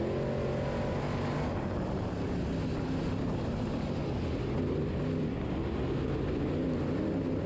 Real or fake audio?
real